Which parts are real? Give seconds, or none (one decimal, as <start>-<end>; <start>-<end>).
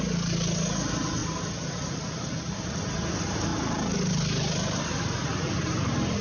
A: 0.0-5.3; 5.8-6.2